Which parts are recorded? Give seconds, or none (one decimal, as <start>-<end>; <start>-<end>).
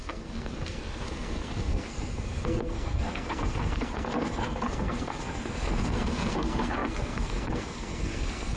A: none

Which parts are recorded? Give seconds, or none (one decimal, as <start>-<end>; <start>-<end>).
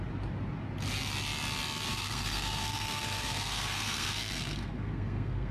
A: 0.0-1.9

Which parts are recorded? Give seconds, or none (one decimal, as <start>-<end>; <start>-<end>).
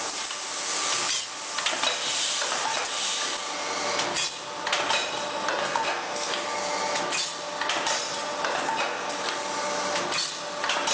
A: 0.0-5.6; 6.3-10.9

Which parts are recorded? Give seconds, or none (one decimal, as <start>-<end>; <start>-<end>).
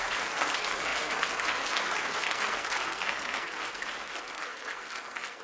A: none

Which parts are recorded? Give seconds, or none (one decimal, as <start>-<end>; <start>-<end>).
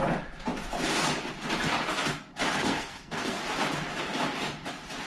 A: 0.0-2.5; 3.4-5.1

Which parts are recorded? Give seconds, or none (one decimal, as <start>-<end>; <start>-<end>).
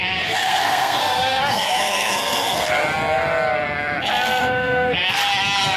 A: 2.8-4.4; 5.2-5.8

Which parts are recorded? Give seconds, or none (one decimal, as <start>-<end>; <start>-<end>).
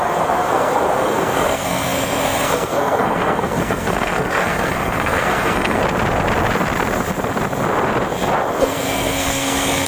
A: 5.8-8.6